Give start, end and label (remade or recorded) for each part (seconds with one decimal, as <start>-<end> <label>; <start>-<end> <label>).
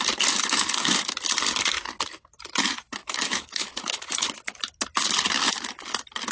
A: 0.0-3.0 recorded; 3.0-4.3 remade; 4.3-6.3 recorded